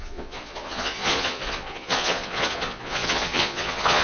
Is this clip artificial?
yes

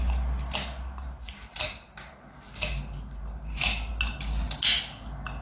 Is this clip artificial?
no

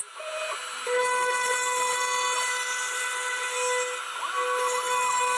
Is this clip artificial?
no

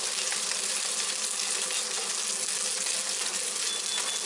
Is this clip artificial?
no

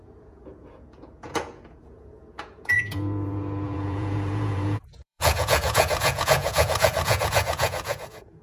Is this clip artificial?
yes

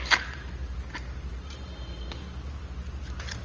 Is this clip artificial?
no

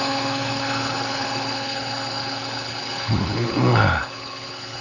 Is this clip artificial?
yes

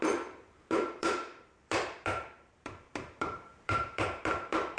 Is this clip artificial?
yes